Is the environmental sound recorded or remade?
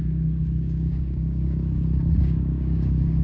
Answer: remade